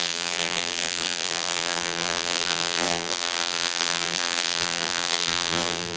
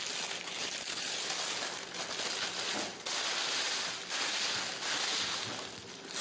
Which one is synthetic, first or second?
first